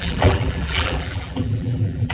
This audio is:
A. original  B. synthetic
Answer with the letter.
B